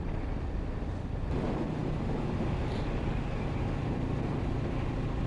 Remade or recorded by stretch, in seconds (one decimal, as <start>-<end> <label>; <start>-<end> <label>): 0.0-5.3 recorded